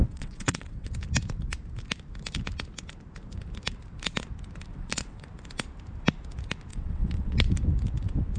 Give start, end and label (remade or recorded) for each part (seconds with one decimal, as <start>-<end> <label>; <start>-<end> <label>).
0.0-0.9 remade; 0.9-4.7 recorded; 4.7-5.2 remade; 5.2-6.7 recorded; 6.7-7.5 remade; 7.5-8.4 recorded